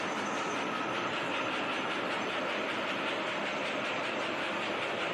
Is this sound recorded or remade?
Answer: remade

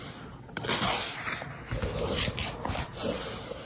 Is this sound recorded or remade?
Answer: recorded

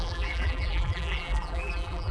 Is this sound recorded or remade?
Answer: remade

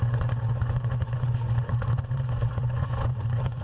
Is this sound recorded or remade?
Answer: remade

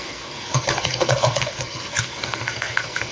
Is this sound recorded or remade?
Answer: remade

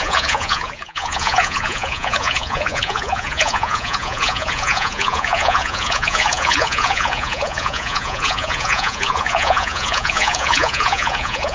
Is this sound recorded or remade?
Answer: remade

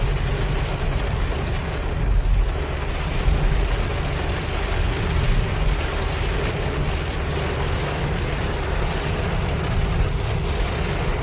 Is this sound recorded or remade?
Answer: recorded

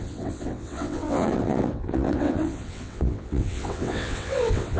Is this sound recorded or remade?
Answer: remade